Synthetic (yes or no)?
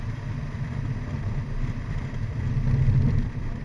yes